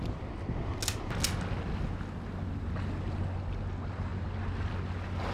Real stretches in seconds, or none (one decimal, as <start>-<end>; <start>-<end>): 0.0-5.3